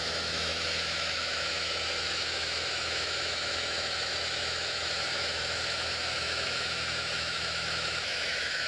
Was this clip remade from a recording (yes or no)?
yes